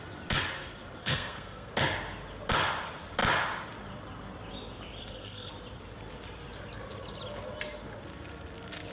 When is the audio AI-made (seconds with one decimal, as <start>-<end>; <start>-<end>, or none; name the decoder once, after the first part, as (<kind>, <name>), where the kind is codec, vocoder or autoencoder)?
1.0-1.7 (codec, SNAC); 5.0-5.5

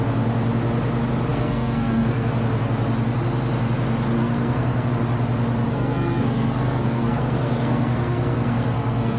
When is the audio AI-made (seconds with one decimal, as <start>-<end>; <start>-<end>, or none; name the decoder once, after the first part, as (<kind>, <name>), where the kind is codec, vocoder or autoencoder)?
1.3-2.3 (codec, SNAC); 4.2-4.9; 5.7-9.2

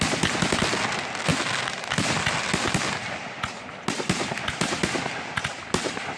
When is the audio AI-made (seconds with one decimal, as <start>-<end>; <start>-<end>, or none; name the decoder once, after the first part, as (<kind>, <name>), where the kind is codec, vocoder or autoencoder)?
none